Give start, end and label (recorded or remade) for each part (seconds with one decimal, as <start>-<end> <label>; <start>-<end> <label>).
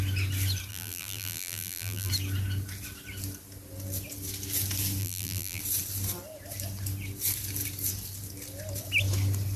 0.0-0.7 recorded; 0.7-2.1 remade; 2.1-5.0 recorded; 5.0-5.6 remade; 5.6-9.6 recorded